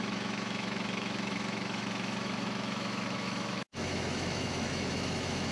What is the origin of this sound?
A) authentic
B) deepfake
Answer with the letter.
B